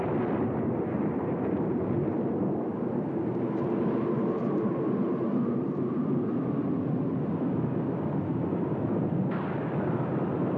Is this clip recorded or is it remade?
recorded